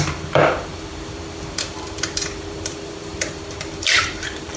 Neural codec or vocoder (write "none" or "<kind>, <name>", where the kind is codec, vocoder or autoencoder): vocoder, BigVGAN v2